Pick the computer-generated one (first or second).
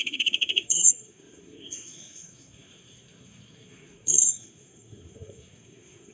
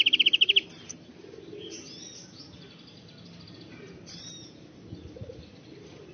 first